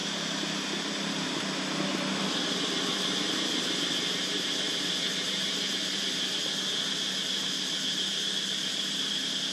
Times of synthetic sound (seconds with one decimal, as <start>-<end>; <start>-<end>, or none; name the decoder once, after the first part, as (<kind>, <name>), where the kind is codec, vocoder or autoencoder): 0.0-4.9 (vocoder, BigVGAN v2)